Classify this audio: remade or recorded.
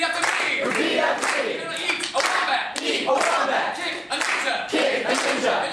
recorded